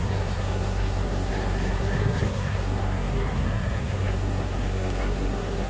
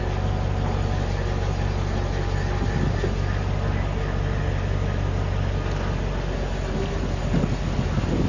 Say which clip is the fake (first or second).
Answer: first